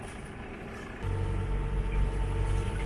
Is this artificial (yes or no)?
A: no